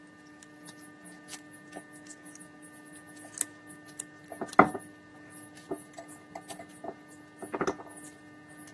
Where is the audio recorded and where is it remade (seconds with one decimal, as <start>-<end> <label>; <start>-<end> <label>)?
0.0-8.7 recorded